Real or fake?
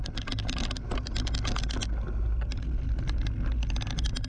real